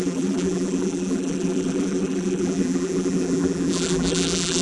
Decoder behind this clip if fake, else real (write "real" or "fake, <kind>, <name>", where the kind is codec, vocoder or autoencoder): fake, vocoder, BigVGAN v2